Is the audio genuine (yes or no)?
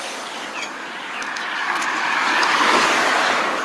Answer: no